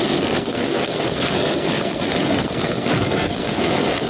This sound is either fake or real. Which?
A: fake